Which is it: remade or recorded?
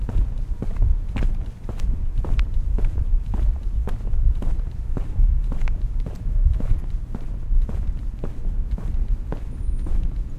remade